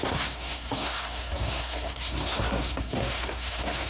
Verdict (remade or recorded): remade